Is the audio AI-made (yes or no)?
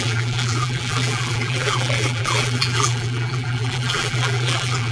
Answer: yes